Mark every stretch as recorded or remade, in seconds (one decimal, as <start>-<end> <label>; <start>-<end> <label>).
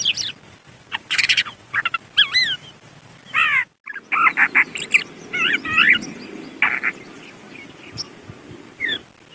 0.0-0.6 recorded; 0.6-1.8 remade; 1.8-9.3 recorded